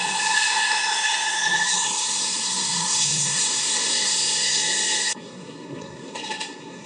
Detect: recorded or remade remade